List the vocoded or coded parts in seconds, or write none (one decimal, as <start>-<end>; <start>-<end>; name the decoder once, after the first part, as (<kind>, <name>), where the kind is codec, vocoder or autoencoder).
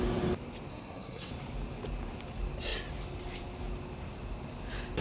0.7-1.3 (codec, SNAC)